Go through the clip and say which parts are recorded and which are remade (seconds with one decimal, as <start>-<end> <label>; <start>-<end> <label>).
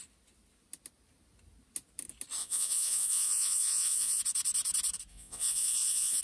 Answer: 0.0-2.4 recorded; 2.4-4.2 remade; 4.2-5.1 recorded; 5.1-6.2 remade